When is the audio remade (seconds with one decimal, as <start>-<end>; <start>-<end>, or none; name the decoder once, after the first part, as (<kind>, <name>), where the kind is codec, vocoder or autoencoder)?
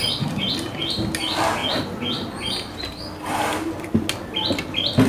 none